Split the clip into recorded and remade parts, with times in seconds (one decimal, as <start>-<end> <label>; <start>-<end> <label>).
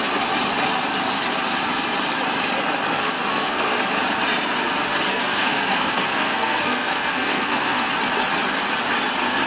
0.0-3.3 recorded; 3.3-3.8 remade; 3.8-5.1 recorded; 5.1-7.9 remade; 7.9-9.5 recorded